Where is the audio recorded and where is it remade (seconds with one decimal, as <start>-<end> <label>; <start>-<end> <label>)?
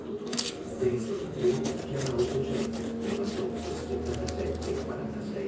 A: 0.0-1.7 remade; 1.7-5.5 recorded